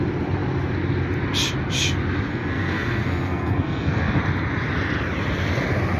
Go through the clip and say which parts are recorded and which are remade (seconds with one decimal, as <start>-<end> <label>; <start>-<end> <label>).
0.0-2.3 recorded; 2.3-4.2 remade; 4.2-6.0 recorded